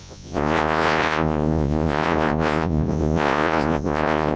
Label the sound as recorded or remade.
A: remade